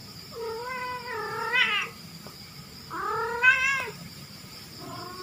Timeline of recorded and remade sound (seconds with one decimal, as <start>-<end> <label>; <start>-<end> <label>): 0.0-5.2 recorded